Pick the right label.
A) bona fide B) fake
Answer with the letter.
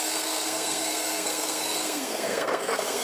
B